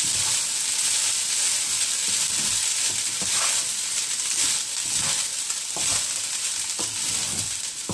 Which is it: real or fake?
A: real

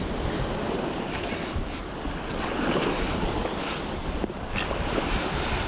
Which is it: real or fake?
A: real